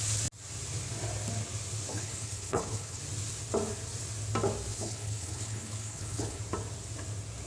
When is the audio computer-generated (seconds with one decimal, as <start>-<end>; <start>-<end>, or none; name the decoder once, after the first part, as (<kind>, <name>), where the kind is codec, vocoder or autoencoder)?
1.9-3.0 (codec, HILCodec); 4.7-6.4

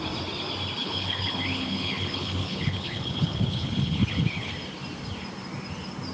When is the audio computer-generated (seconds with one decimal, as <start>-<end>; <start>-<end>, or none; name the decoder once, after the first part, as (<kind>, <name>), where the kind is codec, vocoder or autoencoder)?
0.8-4.5 (codec, HILCodec)

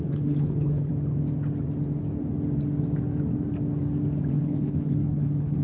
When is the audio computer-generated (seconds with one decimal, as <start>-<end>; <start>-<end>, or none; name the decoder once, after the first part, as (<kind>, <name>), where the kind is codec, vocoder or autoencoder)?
0.0-0.9 (codec, HILCodec); 4.3-5.6